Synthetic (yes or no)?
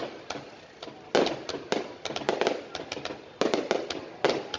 no